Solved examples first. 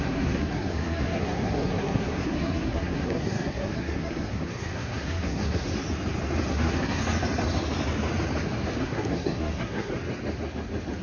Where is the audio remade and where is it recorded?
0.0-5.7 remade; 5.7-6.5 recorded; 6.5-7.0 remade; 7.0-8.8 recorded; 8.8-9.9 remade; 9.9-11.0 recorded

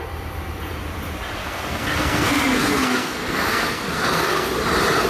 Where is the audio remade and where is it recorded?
0.0-1.4 recorded; 1.4-4.5 remade; 4.5-5.1 recorded